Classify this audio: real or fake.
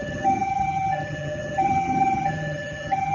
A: fake